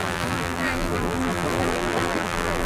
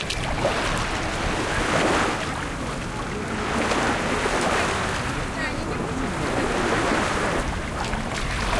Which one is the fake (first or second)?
first